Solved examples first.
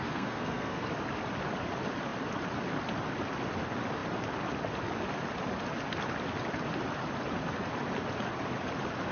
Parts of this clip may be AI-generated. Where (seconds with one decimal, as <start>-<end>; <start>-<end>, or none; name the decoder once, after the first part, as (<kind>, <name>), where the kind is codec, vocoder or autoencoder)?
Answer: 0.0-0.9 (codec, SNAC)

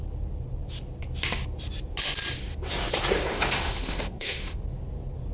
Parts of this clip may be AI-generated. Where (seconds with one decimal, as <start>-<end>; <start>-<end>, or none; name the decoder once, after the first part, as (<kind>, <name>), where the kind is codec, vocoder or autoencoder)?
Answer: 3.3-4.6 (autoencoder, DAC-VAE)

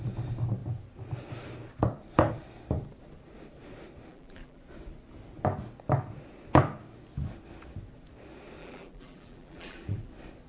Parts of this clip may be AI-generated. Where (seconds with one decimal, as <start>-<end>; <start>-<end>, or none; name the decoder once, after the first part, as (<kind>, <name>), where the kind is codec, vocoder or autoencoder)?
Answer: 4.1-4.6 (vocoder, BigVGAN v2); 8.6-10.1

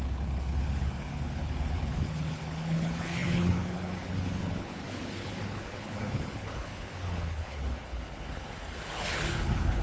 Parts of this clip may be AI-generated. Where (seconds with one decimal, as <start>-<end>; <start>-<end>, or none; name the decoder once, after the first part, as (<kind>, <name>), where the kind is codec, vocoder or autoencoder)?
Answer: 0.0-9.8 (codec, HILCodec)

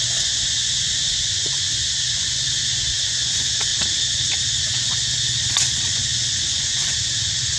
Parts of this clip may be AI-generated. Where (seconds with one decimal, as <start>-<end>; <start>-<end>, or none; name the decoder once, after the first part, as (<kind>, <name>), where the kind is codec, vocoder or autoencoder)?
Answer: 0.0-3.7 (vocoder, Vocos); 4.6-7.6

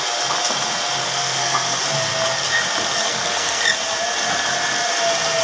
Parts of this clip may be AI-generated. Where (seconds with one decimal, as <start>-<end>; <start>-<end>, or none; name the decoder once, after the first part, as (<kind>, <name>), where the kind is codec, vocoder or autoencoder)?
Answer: 1.0-1.8 (codec, SNAC); 3.1-3.6

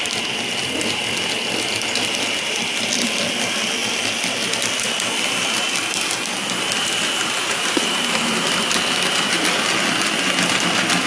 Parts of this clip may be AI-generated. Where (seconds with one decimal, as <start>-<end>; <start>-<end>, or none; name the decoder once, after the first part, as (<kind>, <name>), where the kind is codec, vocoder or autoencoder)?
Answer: none